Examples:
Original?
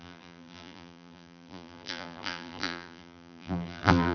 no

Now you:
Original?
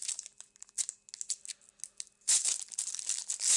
yes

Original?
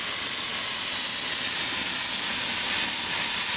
yes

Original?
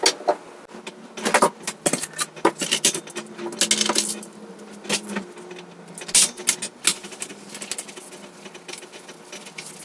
yes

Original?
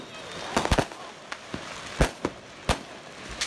yes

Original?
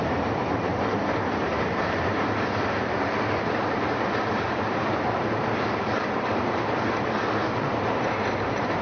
no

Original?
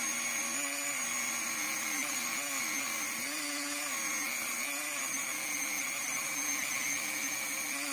yes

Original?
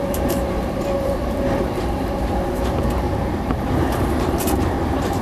no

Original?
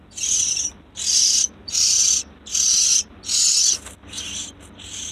no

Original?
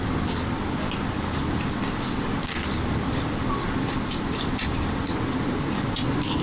yes